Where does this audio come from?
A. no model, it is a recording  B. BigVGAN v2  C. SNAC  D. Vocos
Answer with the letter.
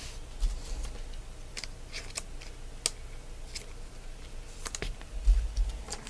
A